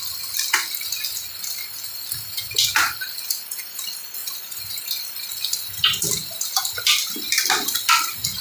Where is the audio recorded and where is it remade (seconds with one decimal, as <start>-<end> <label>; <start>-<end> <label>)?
0.0-8.4 recorded